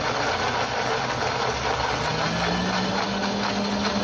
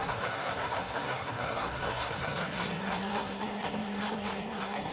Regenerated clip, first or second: second